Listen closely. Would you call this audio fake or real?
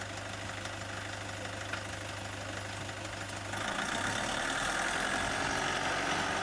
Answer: real